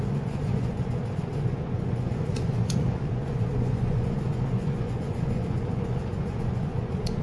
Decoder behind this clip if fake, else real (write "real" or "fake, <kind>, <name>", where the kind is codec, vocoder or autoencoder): fake, vocoder, Vocos